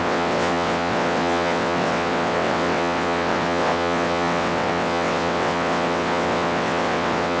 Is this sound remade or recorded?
remade